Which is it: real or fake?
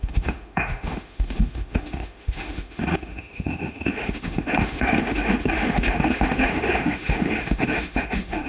fake